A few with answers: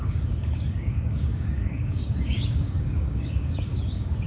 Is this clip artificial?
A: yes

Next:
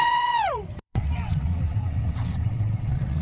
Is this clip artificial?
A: yes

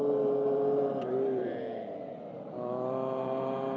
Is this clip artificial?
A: yes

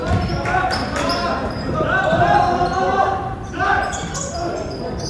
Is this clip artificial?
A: yes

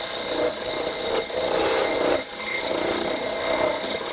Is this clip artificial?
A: no